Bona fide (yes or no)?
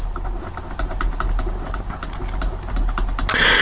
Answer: yes